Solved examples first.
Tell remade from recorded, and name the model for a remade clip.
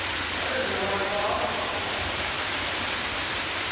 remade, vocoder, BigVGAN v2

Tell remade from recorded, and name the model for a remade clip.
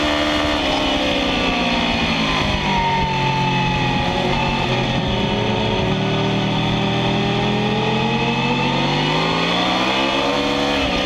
recorded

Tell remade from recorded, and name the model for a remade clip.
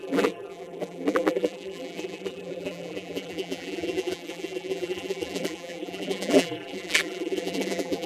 remade, vocoder, BigVGAN v2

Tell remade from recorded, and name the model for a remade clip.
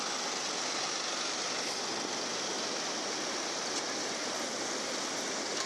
recorded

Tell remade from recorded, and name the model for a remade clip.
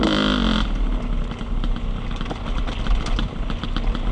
recorded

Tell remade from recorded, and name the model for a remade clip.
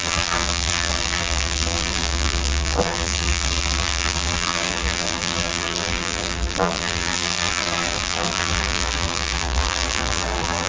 remade, vocoder, BigVGAN v2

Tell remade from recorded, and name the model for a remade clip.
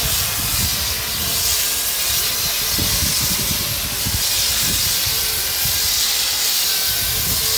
recorded